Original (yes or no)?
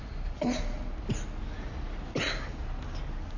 yes